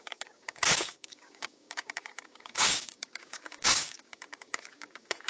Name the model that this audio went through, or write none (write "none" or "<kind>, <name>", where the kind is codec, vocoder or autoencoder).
codec, DAC